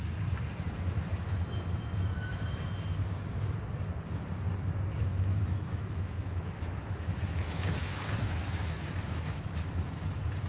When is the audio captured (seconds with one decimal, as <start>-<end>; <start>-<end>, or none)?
0.0-5.0; 10.0-10.5